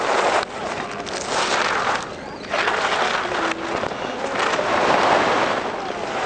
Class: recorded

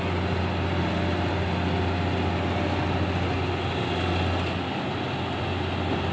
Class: recorded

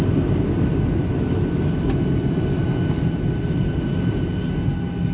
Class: recorded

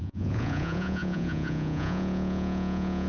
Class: remade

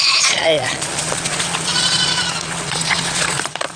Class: remade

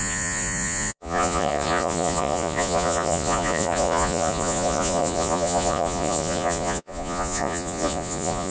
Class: remade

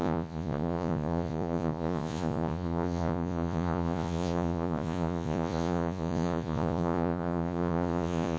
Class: remade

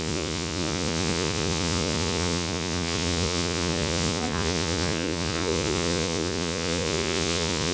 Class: remade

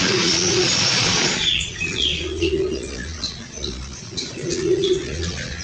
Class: remade